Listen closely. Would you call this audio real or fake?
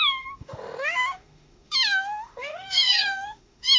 fake